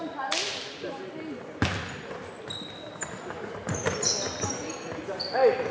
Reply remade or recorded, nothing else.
recorded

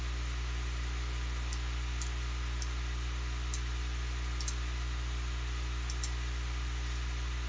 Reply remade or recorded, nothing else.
recorded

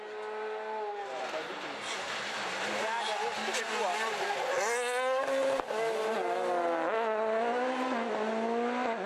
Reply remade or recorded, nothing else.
recorded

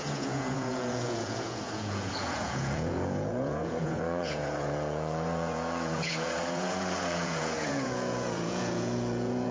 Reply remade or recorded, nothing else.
remade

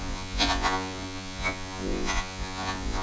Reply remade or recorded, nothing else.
remade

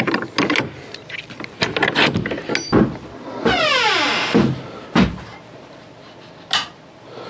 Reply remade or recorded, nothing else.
recorded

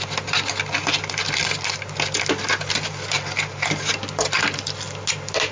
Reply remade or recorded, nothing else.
recorded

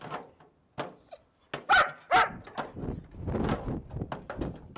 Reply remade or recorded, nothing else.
recorded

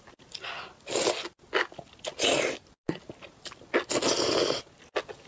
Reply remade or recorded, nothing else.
recorded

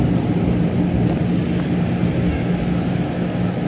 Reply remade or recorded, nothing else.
recorded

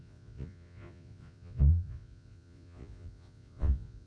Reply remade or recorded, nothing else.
remade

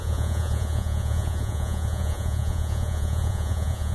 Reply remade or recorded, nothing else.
remade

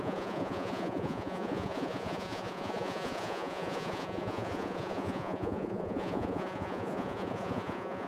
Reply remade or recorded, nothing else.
remade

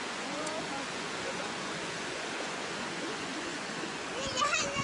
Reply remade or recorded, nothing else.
remade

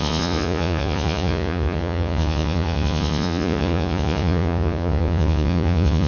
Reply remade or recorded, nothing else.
remade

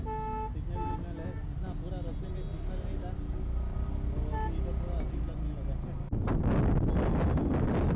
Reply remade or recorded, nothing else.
recorded